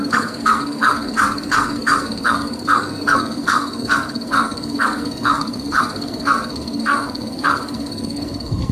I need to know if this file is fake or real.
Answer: fake